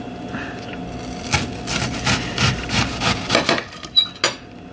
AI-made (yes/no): no